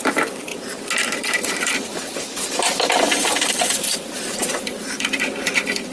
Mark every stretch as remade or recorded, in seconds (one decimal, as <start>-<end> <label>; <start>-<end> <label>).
0.0-5.9 remade